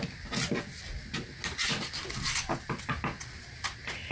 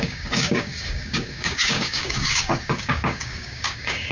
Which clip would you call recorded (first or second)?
first